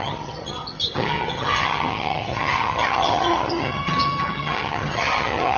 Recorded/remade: remade